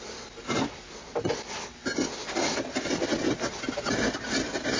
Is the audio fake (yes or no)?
no